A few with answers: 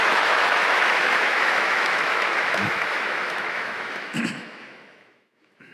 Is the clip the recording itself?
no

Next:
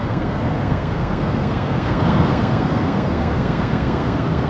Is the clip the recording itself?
no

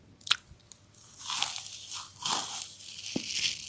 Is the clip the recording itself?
yes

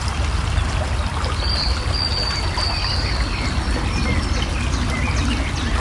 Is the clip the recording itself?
yes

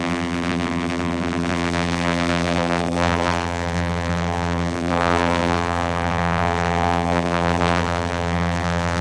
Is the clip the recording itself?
no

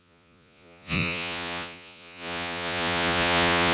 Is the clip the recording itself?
no